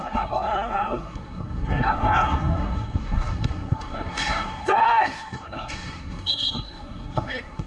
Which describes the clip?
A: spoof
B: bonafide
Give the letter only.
A